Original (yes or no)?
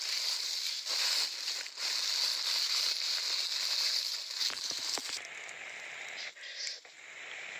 yes